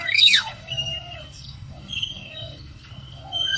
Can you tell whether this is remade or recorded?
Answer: remade